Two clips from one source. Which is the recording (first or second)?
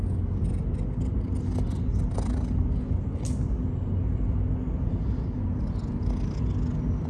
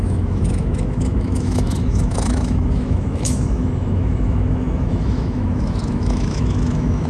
first